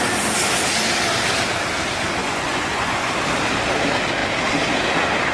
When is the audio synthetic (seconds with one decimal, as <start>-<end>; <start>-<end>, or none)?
2.2-3.1